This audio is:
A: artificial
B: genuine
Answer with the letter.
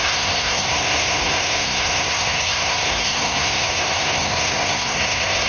A